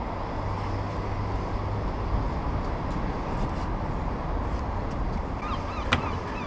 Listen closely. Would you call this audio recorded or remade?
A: recorded